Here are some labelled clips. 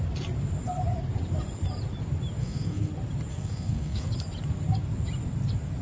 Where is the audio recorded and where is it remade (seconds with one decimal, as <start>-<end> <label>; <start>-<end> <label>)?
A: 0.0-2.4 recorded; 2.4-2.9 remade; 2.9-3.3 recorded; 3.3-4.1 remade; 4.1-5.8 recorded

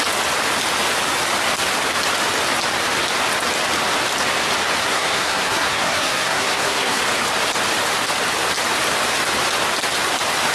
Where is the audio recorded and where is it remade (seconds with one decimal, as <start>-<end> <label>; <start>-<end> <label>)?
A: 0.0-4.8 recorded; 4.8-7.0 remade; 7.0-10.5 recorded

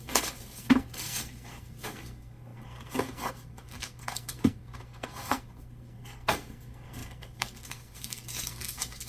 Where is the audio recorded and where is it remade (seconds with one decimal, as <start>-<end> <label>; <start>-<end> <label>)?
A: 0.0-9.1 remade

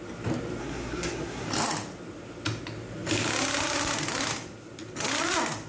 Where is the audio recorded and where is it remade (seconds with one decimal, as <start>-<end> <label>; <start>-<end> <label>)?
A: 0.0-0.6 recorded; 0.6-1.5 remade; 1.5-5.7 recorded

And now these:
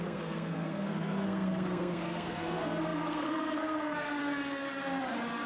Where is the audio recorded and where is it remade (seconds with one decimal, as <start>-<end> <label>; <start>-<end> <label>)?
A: 0.0-4.2 remade; 4.2-5.5 recorded

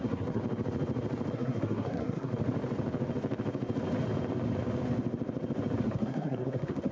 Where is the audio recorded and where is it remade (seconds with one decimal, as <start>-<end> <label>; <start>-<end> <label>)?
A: 0.0-0.4 remade; 0.4-1.3 recorded; 1.3-2.3 remade; 2.3-5.8 recorded; 5.8-6.9 remade

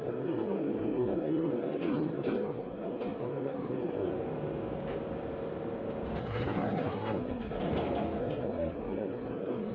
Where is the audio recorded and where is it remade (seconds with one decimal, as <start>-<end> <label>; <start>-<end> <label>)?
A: 0.0-4.1 remade; 4.1-6.2 recorded; 6.2-7.7 remade; 7.7-8.2 recorded; 8.2-9.7 remade